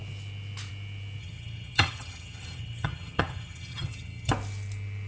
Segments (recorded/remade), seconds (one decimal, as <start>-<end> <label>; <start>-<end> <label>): 0.0-1.2 recorded; 1.2-4.3 remade; 4.3-5.1 recorded